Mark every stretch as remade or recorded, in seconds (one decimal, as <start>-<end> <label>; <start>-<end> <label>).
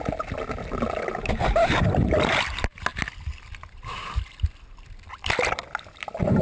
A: 0.0-6.4 recorded